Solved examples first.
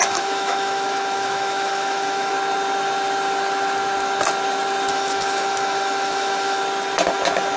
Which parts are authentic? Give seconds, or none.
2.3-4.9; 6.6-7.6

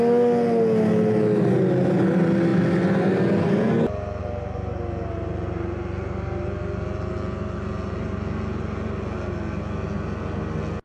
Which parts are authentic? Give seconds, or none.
0.0-10.8

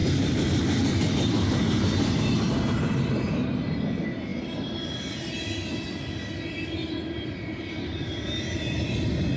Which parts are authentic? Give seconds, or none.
2.6-4.3; 5.1-9.4

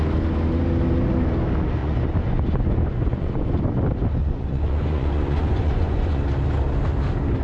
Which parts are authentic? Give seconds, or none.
0.0-1.8; 3.6-4.2; 6.2-7.4

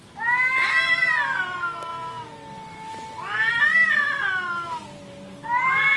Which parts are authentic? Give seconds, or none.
0.0-6.0